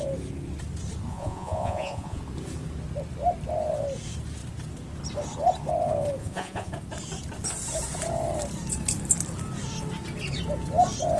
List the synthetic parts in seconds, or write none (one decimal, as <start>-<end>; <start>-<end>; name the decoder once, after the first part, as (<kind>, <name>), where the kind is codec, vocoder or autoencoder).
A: 1.1-2.2 (vocoder, Vocos); 6.2-6.7